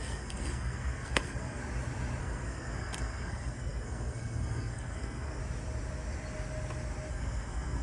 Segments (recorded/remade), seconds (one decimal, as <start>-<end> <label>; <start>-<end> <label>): 0.0-1.6 remade; 1.6-2.2 recorded; 2.2-5.4 remade; 5.4-7.1 recorded; 7.1-7.8 remade